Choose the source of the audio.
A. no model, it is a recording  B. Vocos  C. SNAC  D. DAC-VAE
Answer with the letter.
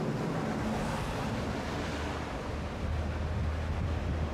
A